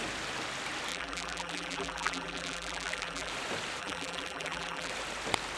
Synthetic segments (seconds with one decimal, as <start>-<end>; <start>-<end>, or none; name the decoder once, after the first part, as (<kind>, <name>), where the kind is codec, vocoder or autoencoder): 0.9-3.3 (vocoder, BigVGAN v2); 3.8-4.9